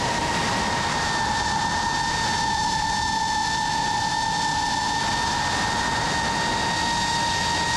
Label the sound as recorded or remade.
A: recorded